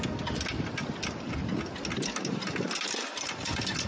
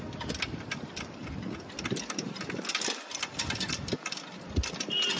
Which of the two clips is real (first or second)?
first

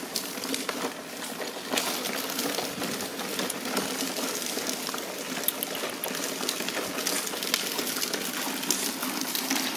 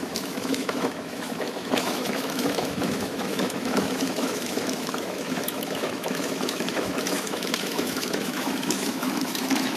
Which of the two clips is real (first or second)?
first